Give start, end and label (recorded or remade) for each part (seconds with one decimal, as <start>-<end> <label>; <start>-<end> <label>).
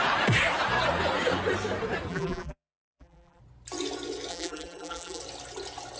0.0-2.1 recorded; 2.1-3.4 remade; 3.4-4.3 recorded; 4.3-5.2 remade; 5.2-6.0 recorded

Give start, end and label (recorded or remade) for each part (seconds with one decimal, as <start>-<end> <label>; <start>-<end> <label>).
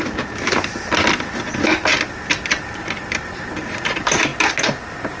0.0-5.2 recorded